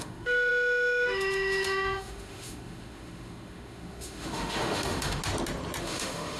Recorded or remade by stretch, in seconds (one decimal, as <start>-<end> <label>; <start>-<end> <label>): 0.0-5.2 remade; 5.2-5.8 recorded; 5.8-6.4 remade